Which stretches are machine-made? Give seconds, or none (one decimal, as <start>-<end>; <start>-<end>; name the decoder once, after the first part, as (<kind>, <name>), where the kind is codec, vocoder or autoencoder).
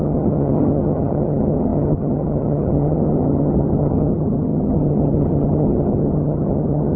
0.0-7.0 (vocoder, HiFi-GAN)